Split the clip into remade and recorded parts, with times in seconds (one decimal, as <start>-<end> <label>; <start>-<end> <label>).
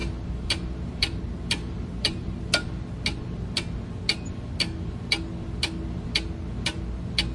0.0-1.2 remade; 1.2-1.6 recorded; 1.6-2.5 remade; 2.5-7.3 recorded